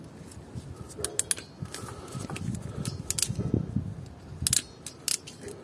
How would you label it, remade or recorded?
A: recorded